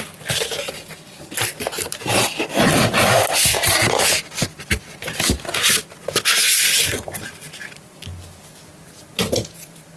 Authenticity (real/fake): real